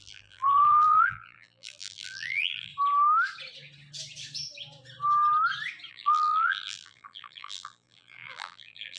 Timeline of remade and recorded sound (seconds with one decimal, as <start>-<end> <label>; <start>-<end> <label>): 0.0-2.7 remade; 2.7-5.9 recorded; 5.9-9.0 remade